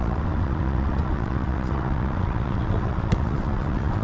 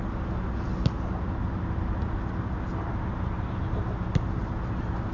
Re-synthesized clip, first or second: first